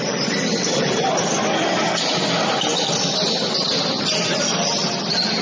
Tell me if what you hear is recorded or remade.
recorded